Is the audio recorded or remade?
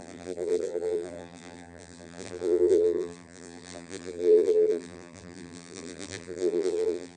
remade